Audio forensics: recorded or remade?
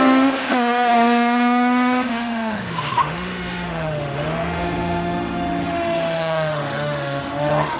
remade